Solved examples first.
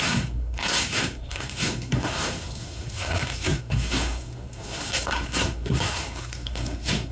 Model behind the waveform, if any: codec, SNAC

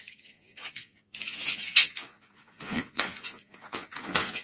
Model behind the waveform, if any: vocoder, Vocos